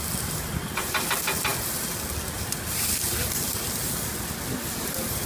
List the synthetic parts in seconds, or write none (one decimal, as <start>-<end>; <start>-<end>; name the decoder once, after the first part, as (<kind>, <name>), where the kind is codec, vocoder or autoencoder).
none